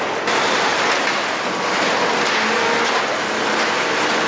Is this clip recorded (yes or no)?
yes